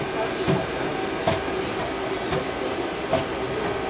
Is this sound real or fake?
real